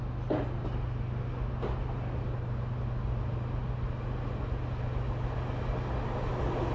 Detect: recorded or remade recorded